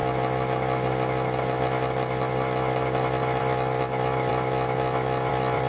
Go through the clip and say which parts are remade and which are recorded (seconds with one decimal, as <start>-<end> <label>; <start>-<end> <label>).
0.0-3.4 recorded; 3.4-4.3 remade; 4.3-5.3 recorded; 5.3-5.7 remade